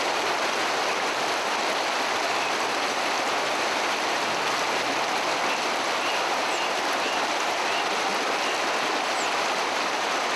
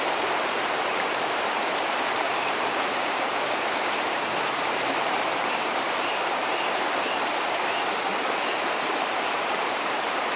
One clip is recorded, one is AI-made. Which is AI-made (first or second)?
second